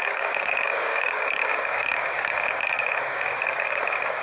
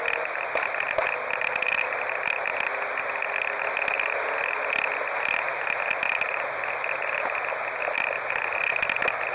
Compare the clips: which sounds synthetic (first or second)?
first